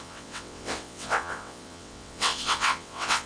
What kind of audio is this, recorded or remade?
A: remade